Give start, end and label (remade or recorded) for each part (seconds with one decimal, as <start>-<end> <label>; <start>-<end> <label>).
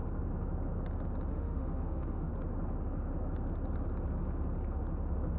0.0-1.3 recorded; 1.3-2.3 remade; 2.3-5.4 recorded